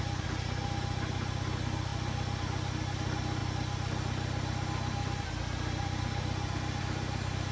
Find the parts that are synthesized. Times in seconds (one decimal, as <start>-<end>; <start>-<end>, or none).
1.9-2.4